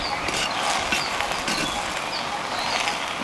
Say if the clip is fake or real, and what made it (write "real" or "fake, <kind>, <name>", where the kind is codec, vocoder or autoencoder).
real